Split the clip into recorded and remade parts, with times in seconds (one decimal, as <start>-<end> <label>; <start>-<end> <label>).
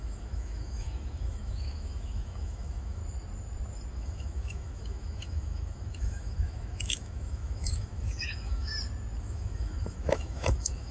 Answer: 0.0-3.0 remade; 3.0-3.9 recorded; 3.9-8.7 remade; 8.7-9.2 recorded; 9.2-10.9 remade